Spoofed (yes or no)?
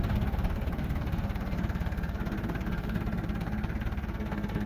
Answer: yes